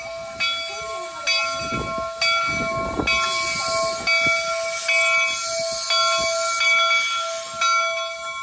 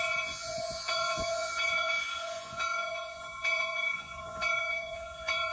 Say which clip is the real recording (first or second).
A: first